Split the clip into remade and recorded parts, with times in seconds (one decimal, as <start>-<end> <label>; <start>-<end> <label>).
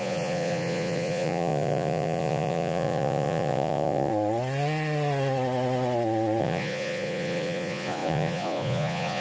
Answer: 0.0-4.1 remade; 4.1-6.4 recorded; 6.4-9.2 remade